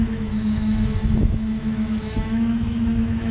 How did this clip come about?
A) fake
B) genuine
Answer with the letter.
A